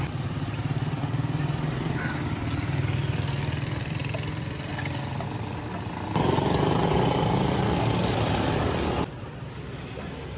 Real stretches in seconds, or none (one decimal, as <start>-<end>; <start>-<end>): 0.6-1.8; 4.0-4.7; 5.7-9.1